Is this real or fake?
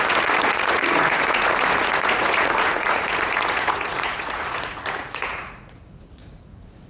fake